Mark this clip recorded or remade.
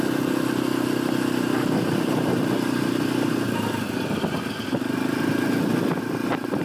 recorded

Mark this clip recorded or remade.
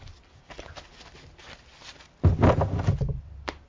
recorded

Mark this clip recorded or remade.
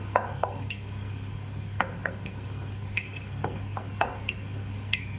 remade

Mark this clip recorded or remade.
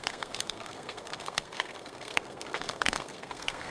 remade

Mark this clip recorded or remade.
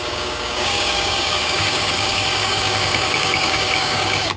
remade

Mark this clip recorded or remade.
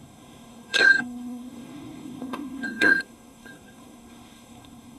remade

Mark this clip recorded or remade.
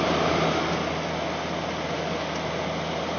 recorded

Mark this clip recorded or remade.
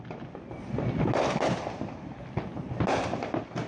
recorded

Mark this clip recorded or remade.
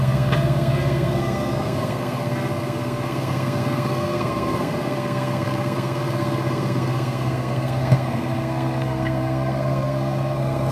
remade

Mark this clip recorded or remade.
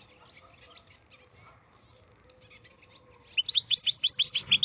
recorded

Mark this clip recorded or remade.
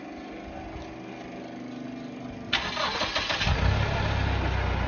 recorded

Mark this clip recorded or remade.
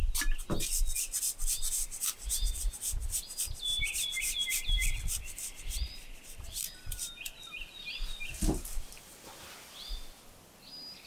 recorded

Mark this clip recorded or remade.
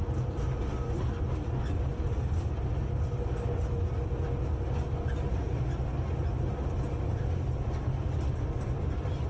recorded